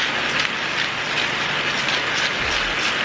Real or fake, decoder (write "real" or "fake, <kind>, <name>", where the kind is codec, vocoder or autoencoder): real